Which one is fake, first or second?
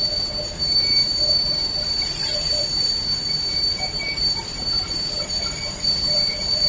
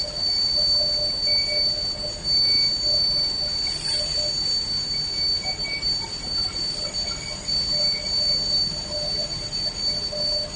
first